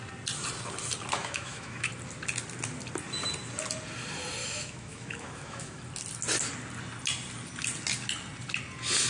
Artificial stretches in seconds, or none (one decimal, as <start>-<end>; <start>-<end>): 1.2-1.9; 4.4-5.8